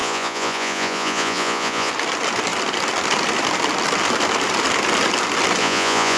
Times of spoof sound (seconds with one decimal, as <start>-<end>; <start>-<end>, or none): 0.0-1.9; 5.6-6.2